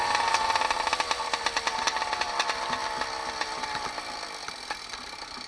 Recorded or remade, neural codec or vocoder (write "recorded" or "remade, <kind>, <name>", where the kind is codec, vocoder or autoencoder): recorded